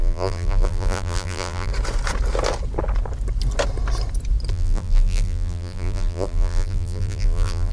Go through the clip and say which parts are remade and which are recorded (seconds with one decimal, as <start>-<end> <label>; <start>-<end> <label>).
0.0-1.7 remade; 1.7-4.5 recorded; 4.5-7.7 remade